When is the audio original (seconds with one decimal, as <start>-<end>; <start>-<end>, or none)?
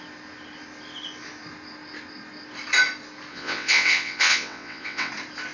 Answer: 0.0-3.3; 5.1-5.5